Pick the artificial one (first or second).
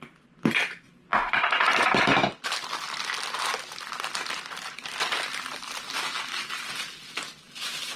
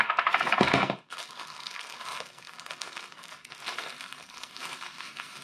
second